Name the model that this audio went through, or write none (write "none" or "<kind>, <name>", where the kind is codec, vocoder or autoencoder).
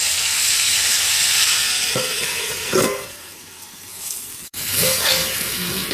codec, SNAC